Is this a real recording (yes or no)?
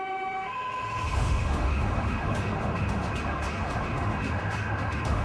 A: no